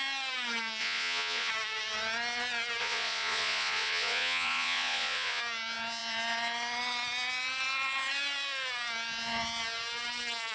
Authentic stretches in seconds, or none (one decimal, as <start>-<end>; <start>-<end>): 0.0-0.8; 1.5-2.8; 5.4-10.5